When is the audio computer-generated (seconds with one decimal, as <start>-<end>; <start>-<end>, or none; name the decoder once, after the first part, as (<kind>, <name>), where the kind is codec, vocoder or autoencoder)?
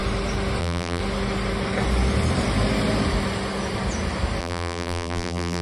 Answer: 0.6-1.0 (vocoder, BigVGAN v2); 4.4-5.6